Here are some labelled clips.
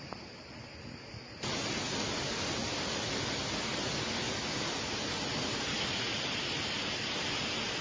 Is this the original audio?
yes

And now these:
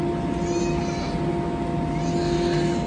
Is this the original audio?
yes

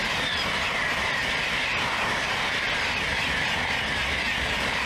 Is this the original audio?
yes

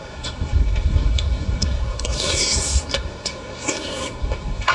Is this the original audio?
no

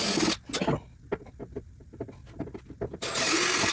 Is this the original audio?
yes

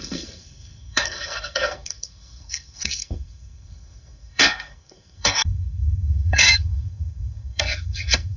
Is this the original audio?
no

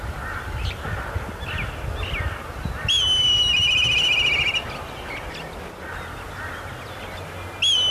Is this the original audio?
yes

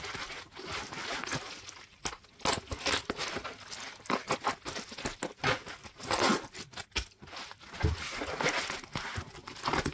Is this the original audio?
yes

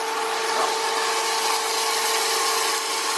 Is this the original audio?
yes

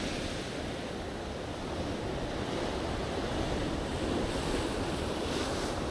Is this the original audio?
yes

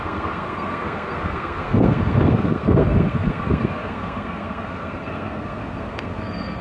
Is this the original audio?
no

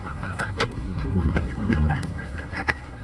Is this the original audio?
no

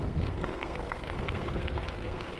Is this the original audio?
no